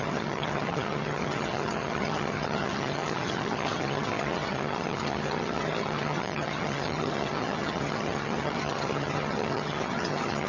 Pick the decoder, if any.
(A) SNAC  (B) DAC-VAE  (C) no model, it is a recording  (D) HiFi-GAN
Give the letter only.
D